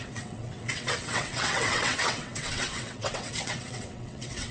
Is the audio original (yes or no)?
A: no